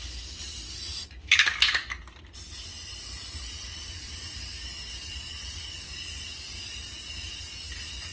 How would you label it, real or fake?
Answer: real